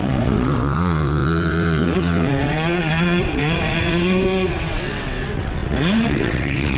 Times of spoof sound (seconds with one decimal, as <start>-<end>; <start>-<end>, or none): 0.0-6.8